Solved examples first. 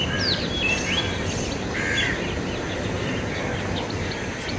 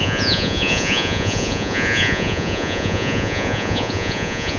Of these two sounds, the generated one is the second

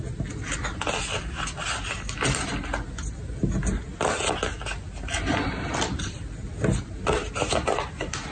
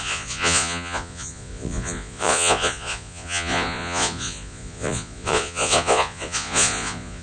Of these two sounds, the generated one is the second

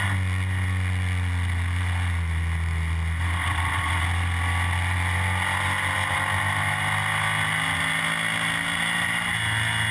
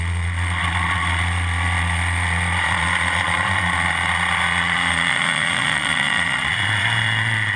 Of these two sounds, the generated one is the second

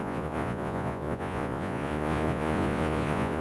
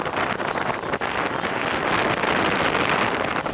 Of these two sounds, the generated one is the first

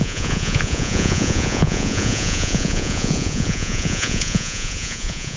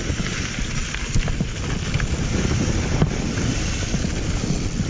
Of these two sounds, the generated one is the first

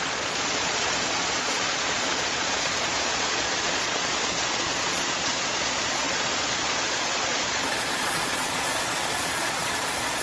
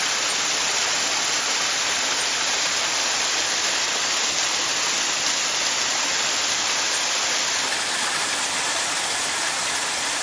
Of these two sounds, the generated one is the first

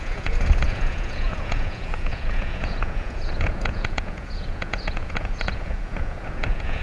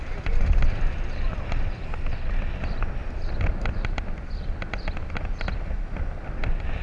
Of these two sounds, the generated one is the first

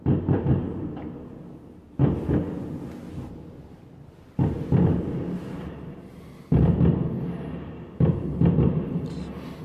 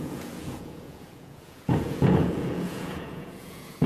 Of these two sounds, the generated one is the second